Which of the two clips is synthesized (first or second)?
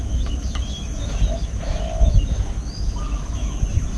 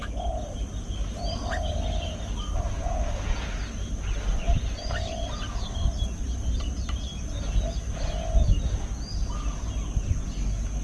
first